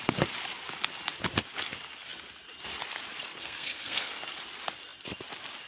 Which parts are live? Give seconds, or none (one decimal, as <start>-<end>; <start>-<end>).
0.0-3.4; 4.1-5.7

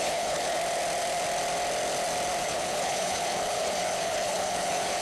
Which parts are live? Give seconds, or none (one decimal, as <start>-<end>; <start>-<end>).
0.6-2.4

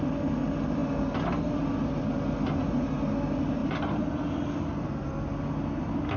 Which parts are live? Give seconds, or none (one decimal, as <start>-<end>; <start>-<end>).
0.0-6.2

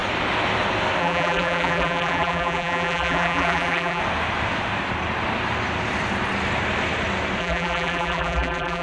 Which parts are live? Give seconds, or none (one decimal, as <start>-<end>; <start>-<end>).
0.0-1.0; 4.0-7.4

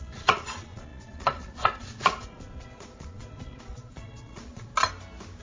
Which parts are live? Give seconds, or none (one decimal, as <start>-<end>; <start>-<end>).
4.7-5.4

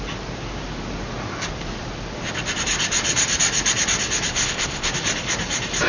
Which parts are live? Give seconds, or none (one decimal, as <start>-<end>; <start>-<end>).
0.0-4.3; 4.9-5.9

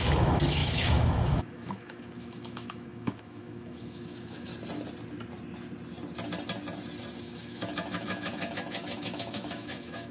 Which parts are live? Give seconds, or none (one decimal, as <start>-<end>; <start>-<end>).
4.5-7.2

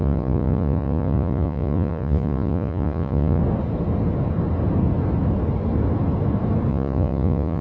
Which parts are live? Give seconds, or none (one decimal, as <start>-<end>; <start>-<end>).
3.4-6.7